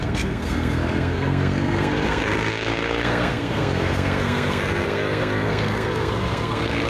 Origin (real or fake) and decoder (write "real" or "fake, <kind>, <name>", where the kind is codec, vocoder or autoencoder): fake, codec, SNAC